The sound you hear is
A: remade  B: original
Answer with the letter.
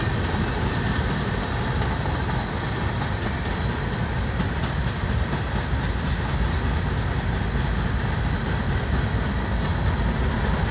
B